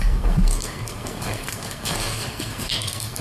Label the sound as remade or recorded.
remade